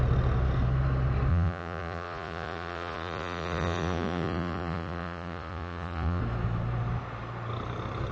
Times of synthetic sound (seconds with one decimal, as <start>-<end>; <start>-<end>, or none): 1.3-6.2